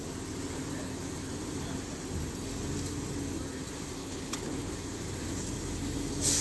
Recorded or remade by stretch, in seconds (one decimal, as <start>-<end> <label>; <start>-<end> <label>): 0.0-4.0 recorded; 4.0-4.7 remade; 4.7-6.4 recorded